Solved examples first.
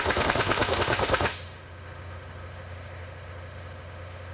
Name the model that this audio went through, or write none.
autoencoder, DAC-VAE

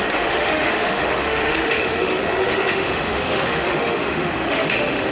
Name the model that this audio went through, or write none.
autoencoder, DAC-VAE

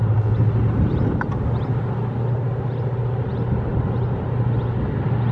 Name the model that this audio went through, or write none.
none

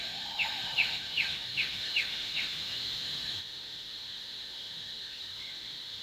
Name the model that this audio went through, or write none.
autoencoder, DAC-VAE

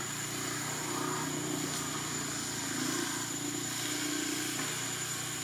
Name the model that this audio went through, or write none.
none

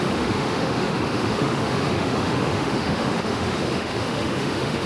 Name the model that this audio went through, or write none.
autoencoder, DAC-VAE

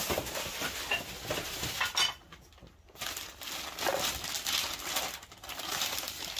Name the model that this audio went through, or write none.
none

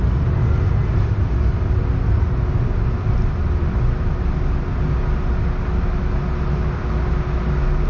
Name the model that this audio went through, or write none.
none